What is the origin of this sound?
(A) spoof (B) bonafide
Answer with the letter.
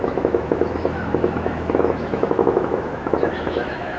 A